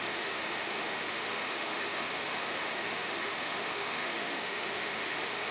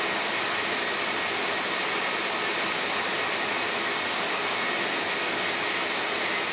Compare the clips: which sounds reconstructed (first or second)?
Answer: first